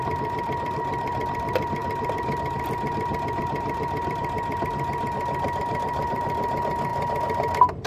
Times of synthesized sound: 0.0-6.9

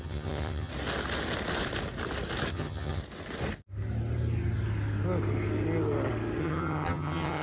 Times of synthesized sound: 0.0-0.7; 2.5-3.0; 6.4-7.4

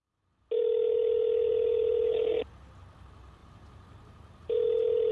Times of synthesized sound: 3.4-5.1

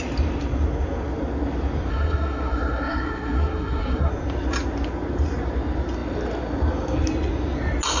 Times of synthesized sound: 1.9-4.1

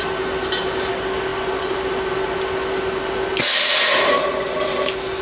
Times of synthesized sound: none

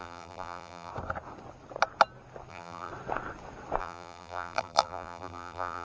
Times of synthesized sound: 0.0-0.9; 2.5-2.9; 3.8-5.8

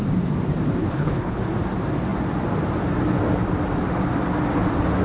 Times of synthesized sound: 0.8-1.4